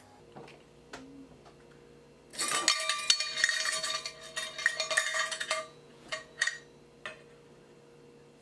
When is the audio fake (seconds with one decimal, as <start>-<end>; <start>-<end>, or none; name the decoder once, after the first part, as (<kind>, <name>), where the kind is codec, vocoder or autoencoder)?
5.1-6.5 (vocoder, Vocos)